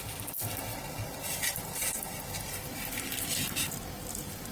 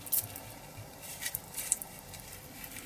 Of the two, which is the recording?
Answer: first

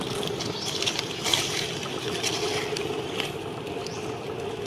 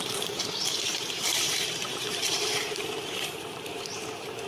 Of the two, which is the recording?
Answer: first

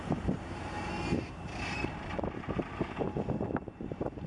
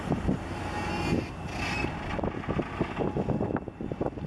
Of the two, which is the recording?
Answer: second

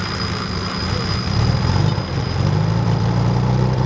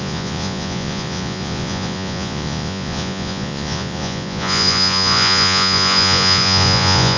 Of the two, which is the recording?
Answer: first